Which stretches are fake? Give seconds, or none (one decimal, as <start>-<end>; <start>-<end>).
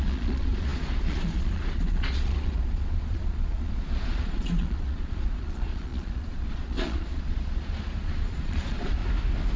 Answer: 0.0-9.0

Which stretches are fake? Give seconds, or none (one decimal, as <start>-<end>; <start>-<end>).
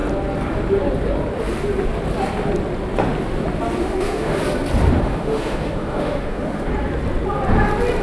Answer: 3.8-4.4; 5.0-6.7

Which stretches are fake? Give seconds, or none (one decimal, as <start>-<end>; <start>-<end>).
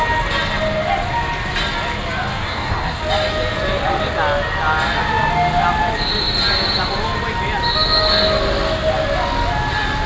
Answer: 2.3-3.0